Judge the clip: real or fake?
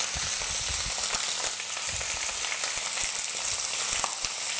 real